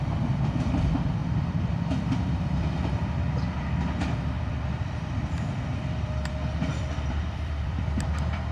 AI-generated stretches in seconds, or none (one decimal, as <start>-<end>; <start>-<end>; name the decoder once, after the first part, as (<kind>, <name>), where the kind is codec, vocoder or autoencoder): 0.0-8.5 (vocoder, BigVGAN v2)